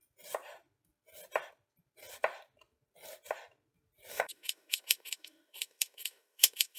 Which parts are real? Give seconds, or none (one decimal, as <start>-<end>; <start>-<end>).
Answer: 0.0-4.1